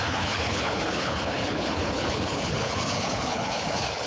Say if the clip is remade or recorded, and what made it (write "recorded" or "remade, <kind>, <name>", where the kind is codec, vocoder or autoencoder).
remade, codec, HILCodec